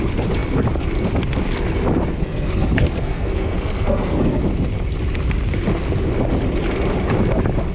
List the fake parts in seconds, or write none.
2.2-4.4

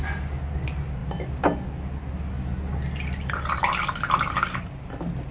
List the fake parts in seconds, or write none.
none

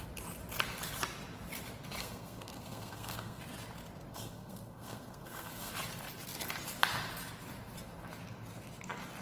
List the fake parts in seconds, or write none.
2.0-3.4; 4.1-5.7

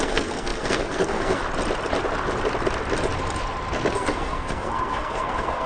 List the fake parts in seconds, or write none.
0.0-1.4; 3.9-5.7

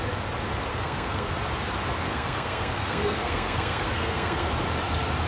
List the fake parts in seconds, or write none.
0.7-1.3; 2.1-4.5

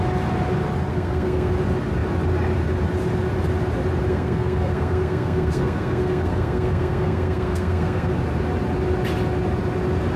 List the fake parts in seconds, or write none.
0.9-1.5; 4.1-8.1

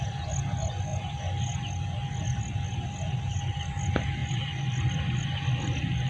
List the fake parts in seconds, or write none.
none